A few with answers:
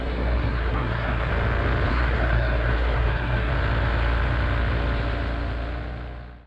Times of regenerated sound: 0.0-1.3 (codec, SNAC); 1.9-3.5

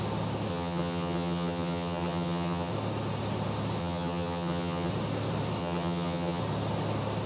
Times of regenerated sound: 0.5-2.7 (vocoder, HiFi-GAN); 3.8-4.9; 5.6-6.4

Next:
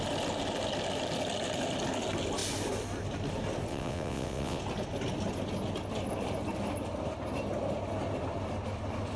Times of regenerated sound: 3.7-4.6 (vocoder, WaveNeXt)

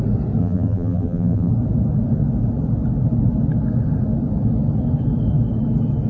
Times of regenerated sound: 0.4-1.5 (vocoder, BigVGAN v2)